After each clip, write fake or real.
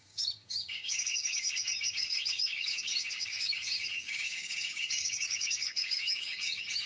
fake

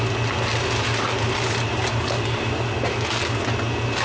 real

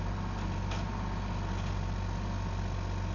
real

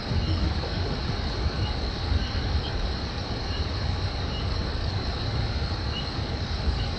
fake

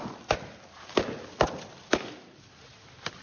real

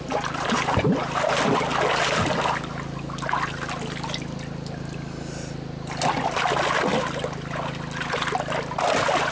real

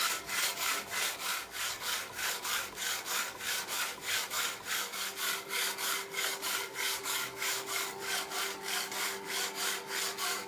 fake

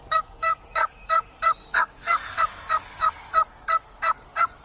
fake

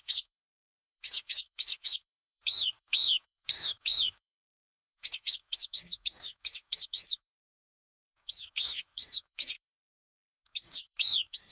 fake